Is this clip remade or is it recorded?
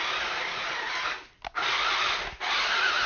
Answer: recorded